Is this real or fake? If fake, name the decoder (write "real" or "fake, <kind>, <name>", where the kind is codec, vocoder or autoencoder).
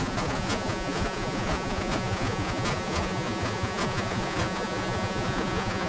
fake, vocoder, Vocos